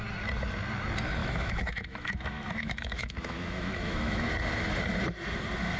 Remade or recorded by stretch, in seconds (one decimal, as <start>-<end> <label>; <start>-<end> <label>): 0.0-1.2 recorded; 1.2-4.3 remade; 4.3-5.8 recorded